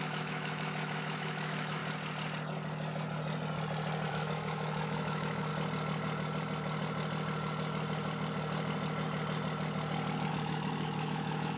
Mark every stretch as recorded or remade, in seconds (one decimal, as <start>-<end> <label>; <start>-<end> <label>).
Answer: 0.0-1.8 remade; 1.8-4.1 recorded; 4.1-5.5 remade; 5.5-10.3 recorded; 10.3-11.6 remade